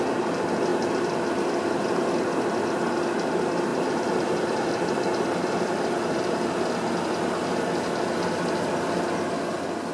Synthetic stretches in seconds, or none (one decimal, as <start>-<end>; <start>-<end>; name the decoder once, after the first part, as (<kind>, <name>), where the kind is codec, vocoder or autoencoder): 3.7-6.5 (vocoder, BigVGAN v2)